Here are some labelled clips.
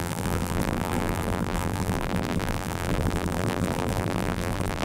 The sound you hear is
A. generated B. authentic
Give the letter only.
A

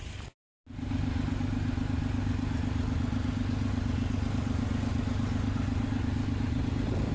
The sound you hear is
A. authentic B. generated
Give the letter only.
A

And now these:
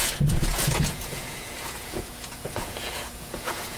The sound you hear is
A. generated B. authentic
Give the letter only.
A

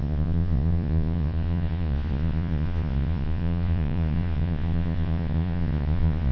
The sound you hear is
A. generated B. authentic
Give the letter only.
A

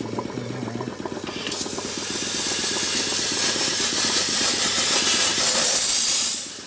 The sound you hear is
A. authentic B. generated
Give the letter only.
A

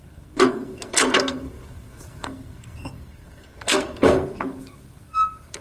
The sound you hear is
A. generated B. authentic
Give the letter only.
A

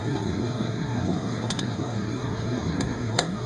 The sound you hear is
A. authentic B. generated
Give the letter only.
B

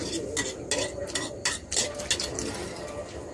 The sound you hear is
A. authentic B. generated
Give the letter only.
A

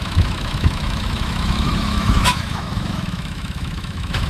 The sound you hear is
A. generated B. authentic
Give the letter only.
A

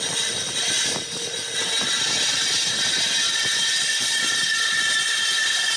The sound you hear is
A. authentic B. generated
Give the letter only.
A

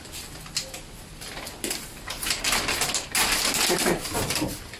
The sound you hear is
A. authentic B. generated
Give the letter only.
A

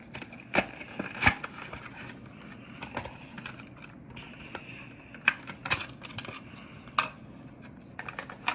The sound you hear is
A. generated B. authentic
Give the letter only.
B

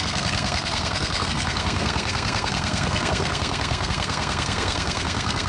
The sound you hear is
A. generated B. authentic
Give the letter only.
A